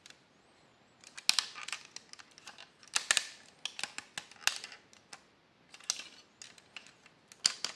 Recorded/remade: recorded